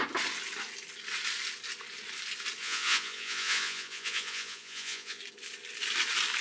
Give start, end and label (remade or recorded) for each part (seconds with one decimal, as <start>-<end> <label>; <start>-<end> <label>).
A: 0.0-2.6 recorded; 2.6-5.2 remade; 5.2-6.4 recorded